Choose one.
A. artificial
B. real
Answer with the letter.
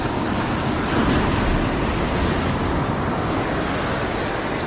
B